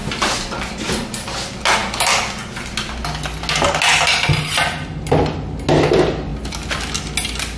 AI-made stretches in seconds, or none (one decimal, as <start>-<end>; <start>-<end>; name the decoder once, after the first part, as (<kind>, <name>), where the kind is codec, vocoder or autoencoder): none